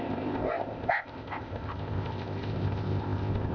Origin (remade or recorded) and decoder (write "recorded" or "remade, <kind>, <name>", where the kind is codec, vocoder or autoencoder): remade, codec, ZipCodec